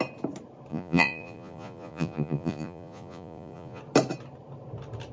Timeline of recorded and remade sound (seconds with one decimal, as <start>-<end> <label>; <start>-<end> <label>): 0.0-0.7 recorded; 0.7-3.8 remade; 3.8-5.1 recorded